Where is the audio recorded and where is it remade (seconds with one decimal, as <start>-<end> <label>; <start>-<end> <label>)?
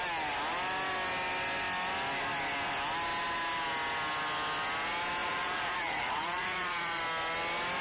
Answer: 0.0-5.2 recorded; 5.2-7.0 remade; 7.0-7.8 recorded